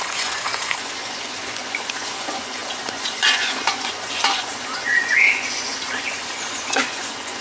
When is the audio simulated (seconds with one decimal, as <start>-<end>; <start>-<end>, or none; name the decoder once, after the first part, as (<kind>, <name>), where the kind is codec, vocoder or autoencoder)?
0.0-7.4 (vocoder, Vocos)